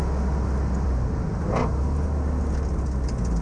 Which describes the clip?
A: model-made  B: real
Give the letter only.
B